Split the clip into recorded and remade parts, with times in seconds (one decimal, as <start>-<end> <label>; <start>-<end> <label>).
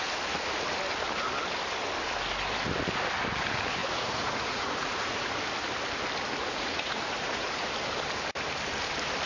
0.0-3.8 recorded; 3.8-5.4 remade; 5.4-6.4 recorded; 6.4-7.7 remade; 7.7-9.3 recorded